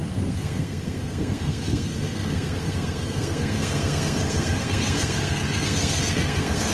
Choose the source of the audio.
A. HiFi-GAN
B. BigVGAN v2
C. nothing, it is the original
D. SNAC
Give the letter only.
D